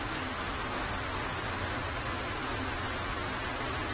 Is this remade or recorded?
recorded